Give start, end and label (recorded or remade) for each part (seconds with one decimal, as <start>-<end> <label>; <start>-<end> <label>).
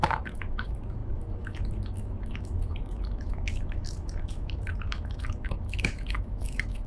0.0-6.9 remade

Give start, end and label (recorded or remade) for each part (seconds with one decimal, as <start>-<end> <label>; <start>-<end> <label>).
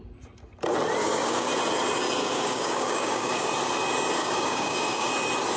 0.0-1.0 recorded; 1.0-1.5 remade; 1.5-2.2 recorded; 2.2-3.5 remade; 3.5-4.2 recorded; 4.2-5.1 remade; 5.1-5.6 recorded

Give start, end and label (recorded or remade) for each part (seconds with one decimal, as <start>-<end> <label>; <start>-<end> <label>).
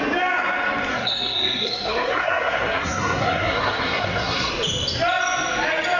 0.0-0.9 recorded; 0.9-4.5 remade; 4.5-6.0 recorded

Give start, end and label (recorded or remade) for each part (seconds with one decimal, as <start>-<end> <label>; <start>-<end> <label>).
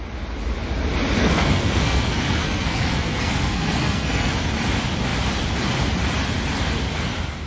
0.0-1.2 recorded; 1.2-4.3 remade; 4.3-7.5 recorded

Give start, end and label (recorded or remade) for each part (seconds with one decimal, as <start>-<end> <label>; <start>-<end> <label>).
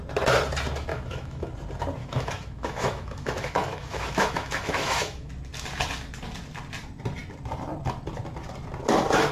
0.0-0.9 recorded; 0.9-1.5 remade; 1.5-2.0 recorded; 2.0-5.3 remade; 5.3-9.3 recorded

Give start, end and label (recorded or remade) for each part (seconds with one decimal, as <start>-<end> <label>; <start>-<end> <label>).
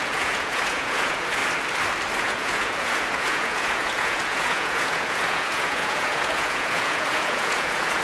0.0-1.4 remade; 1.4-2.2 recorded; 2.2-8.0 remade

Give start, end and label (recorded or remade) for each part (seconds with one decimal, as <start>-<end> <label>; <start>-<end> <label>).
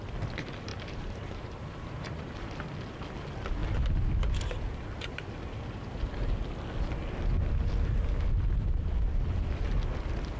0.0-0.7 recorded; 0.7-2.5 remade; 2.5-10.4 recorded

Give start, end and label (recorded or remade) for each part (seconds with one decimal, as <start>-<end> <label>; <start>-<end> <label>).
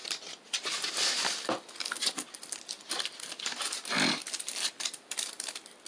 0.0-5.9 recorded